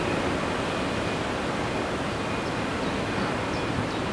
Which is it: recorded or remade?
recorded